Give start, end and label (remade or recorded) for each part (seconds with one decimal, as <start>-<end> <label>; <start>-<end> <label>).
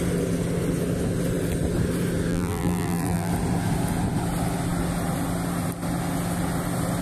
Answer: 0.0-2.3 recorded; 2.3-3.3 remade; 3.3-7.0 recorded